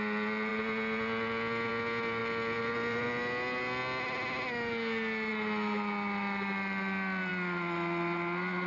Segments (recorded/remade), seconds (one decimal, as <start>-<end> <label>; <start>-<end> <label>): 0.0-2.2 recorded; 2.2-3.0 remade; 3.0-8.7 recorded